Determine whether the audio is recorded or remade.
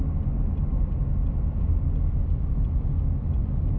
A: recorded